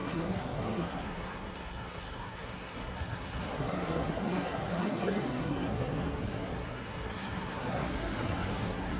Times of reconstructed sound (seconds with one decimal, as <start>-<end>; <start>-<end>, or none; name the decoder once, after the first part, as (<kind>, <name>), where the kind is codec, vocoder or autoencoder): 0.0-9.0 (codec, SNAC)

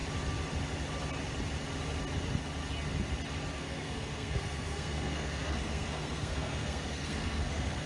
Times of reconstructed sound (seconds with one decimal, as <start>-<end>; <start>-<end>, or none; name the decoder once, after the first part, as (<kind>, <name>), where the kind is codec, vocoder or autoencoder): 3.5-7.9 (codec, SNAC)

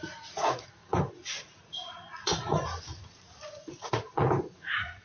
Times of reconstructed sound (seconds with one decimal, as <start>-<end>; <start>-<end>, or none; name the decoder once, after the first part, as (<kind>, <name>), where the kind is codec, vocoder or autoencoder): 0.0-5.0 (vocoder, Vocos)

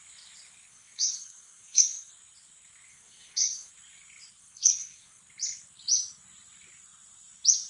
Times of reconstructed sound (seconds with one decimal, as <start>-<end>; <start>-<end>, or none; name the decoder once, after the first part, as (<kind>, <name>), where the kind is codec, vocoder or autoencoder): 0.7-2.1 (codec, SNAC); 2.9-3.7; 4.4-5.2

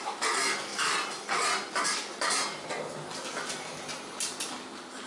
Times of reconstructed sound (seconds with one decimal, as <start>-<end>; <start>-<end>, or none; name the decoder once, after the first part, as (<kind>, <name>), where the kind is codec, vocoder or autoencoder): none

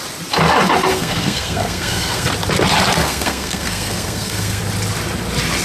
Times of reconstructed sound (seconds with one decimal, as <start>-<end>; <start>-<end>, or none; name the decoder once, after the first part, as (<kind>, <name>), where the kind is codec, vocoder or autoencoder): 0.9-2.3 (codec, SNAC); 3.0-4.6

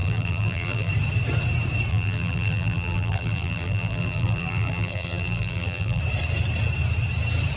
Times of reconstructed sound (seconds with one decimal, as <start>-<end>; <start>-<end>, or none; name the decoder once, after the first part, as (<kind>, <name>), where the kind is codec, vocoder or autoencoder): 0.0-0.9 (vocoder, BigVGAN v2); 1.9-6.0